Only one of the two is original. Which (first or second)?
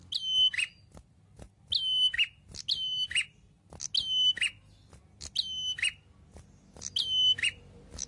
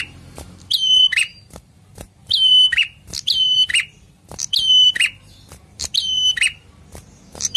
first